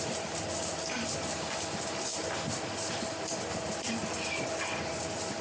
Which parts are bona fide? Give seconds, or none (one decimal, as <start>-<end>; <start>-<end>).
4.0-4.7